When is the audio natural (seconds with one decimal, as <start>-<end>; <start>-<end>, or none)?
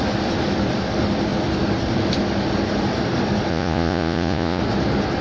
0.0-3.5; 4.6-5.2